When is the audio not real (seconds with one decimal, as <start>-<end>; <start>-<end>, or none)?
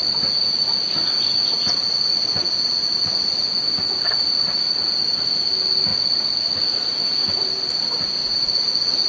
none